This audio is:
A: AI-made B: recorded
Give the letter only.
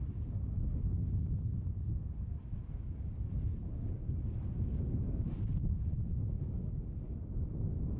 B